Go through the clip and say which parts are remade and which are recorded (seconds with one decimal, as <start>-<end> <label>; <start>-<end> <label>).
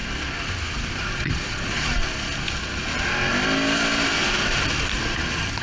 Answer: 0.0-1.1 recorded; 1.1-2.0 remade; 2.0-5.6 recorded